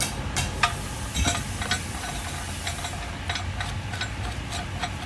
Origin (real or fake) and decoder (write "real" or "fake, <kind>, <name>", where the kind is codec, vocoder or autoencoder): real